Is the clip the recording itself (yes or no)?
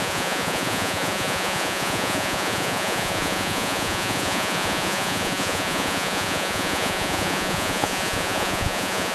no